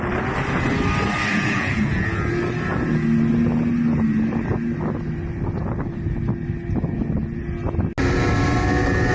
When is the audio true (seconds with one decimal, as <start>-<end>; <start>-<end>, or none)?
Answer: 0.0-1.3; 2.3-9.1